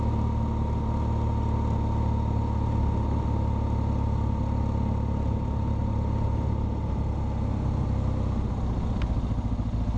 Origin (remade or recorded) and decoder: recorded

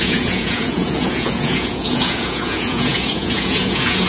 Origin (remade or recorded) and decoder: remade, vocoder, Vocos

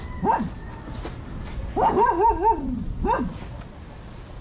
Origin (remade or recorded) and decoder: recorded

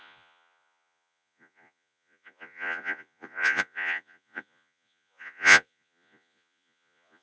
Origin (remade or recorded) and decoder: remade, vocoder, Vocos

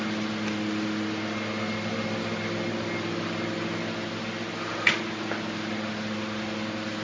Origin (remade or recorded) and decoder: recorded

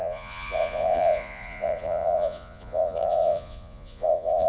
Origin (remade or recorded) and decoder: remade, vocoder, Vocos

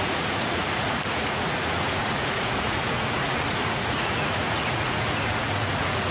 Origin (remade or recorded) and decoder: remade, vocoder, Vocos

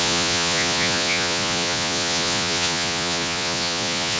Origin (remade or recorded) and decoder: remade, vocoder, Vocos